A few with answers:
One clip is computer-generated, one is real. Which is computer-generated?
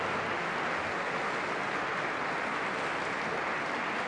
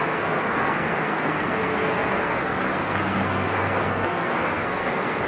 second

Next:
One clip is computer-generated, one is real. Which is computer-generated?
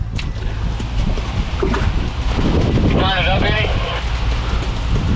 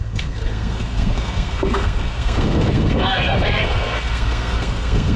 second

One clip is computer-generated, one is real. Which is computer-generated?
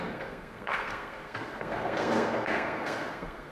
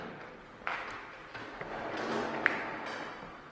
first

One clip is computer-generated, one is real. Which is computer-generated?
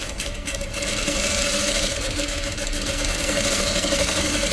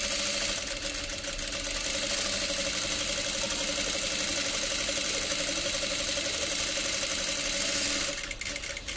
first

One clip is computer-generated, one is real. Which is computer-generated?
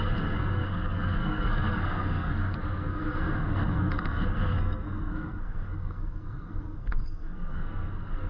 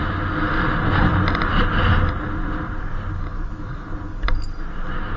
first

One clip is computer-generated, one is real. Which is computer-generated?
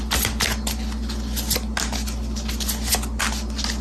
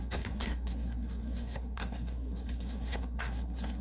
second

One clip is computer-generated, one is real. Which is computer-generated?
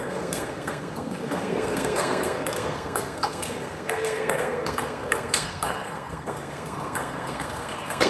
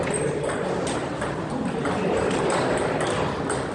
first